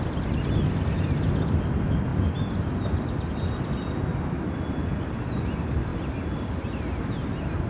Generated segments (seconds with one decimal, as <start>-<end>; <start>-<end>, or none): none